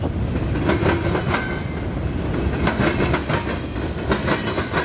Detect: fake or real real